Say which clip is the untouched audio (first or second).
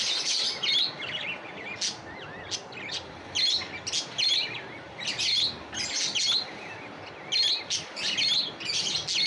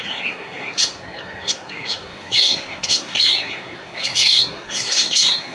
first